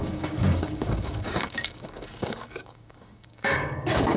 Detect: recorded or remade remade